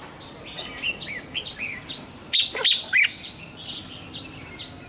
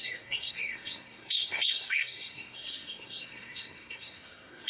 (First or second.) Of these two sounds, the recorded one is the first